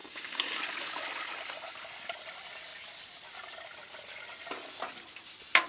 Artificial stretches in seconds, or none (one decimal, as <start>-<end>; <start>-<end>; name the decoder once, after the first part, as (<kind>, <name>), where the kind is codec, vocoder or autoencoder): 0.0-0.6 (codec, DAC)